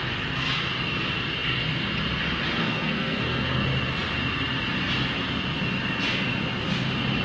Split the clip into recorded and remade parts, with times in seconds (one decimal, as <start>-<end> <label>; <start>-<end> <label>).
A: 0.0-2.6 recorded; 2.6-3.6 remade; 3.6-7.2 recorded

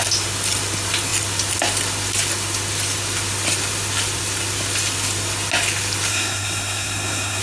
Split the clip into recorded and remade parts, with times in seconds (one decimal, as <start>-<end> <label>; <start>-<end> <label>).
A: 0.0-6.1 recorded; 6.1-7.4 remade

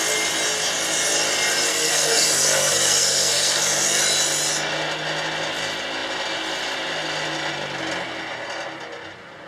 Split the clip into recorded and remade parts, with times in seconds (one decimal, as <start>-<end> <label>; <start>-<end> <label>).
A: 0.0-1.7 recorded; 1.7-4.0 remade; 4.0-9.5 recorded

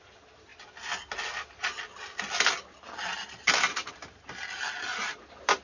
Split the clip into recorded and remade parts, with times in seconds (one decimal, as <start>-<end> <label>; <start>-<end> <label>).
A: 0.0-5.6 recorded

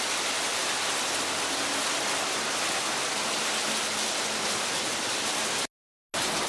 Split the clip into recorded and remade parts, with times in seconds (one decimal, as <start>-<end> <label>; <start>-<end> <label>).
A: 0.0-6.5 recorded

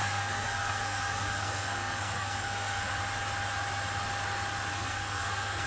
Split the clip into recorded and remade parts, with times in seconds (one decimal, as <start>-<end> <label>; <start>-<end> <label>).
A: 0.0-2.9 remade; 2.9-4.7 recorded; 4.7-5.7 remade